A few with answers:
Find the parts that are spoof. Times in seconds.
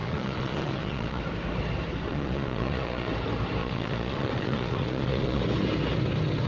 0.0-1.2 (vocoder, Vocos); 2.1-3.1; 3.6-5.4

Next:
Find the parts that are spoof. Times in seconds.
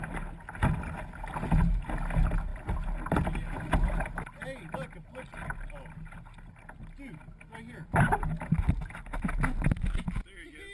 none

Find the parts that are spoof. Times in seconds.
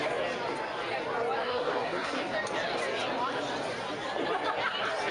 1.4-2.2 (codec, SNAC)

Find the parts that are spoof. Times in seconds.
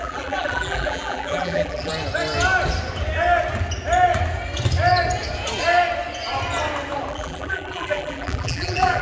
0.0-1.9 (vocoder, BigVGAN v2); 7.1-9.0